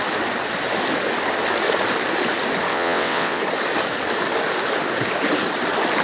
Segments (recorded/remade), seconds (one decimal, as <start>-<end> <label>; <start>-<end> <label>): 0.0-2.7 recorded; 2.7-3.4 remade; 3.4-6.0 recorded